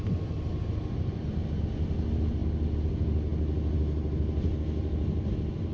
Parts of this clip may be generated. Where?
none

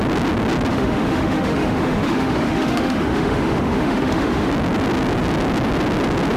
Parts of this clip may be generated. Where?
0.7-4.5 (autoencoder, DAC-VAE)

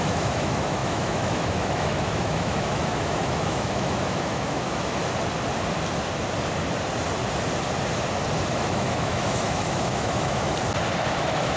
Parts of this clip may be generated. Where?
0.0-5.0 (autoencoder, DAC-VAE); 8.5-10.5; 11.1-11.6

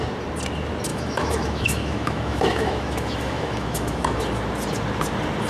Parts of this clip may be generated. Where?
0.9-4.2 (autoencoder, DAC-VAE)

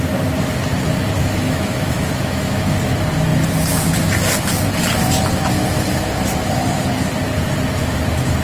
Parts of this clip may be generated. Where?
1.2-2.9 (autoencoder, DAC-VAE)

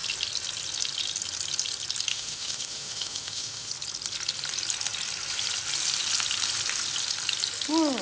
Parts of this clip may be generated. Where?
2.1-3.7 (autoencoder, DAC-VAE)

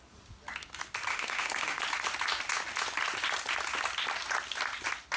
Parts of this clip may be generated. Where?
1.1-1.8 (autoencoder, DAC-VAE)

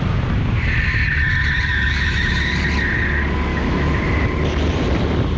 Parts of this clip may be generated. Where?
1.7-2.5 (autoencoder, DAC-VAE); 3.5-4.0